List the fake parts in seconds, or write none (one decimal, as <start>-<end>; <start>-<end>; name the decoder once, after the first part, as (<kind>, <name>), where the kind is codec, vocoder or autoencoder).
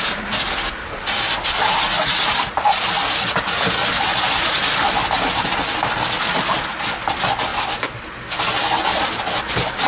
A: none